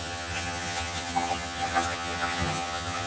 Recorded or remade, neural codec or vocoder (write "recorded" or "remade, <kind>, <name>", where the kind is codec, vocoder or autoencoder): remade, vocoder, HiFi-GAN